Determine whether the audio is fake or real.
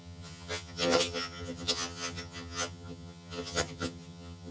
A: fake